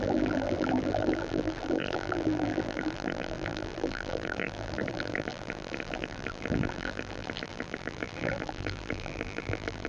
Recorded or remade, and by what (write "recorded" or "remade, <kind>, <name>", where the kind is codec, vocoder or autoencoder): remade, vocoder, BigVGAN v2